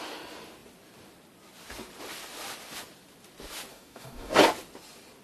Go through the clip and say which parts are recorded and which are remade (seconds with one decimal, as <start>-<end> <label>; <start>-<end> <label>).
0.0-3.7 recorded; 3.7-4.4 remade; 4.4-5.2 recorded